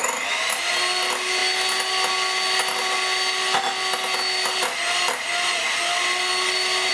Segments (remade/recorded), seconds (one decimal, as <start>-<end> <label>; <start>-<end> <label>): 0.0-5.6 recorded; 5.6-6.9 remade